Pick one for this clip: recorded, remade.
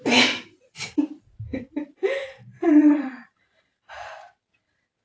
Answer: remade